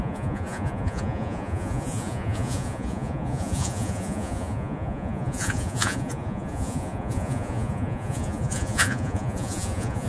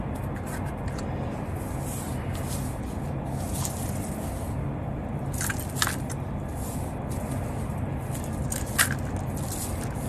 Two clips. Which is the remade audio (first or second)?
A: first